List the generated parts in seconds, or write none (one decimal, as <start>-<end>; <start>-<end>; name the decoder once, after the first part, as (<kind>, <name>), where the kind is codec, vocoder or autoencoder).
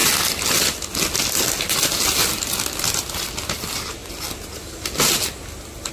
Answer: none